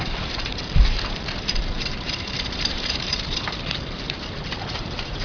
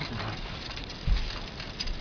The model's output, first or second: first